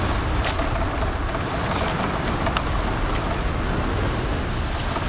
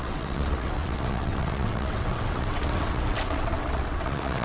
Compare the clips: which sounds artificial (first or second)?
second